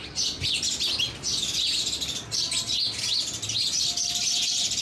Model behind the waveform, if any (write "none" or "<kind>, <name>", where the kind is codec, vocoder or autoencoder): none